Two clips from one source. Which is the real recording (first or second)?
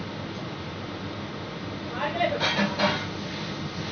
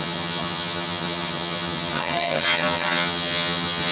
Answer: first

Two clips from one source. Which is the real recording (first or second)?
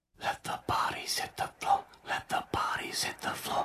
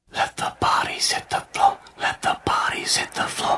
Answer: second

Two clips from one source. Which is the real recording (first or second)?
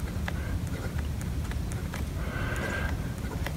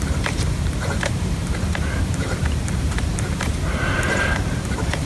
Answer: first